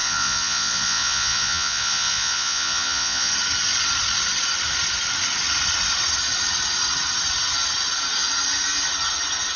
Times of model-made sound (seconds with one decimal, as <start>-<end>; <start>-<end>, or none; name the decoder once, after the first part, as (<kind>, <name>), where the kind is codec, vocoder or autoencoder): 0.0-3.3 (vocoder, Vocos)